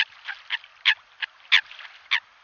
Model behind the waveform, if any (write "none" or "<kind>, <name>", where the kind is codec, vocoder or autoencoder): none